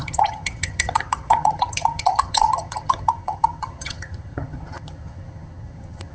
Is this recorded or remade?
remade